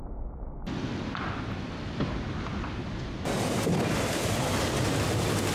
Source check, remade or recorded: recorded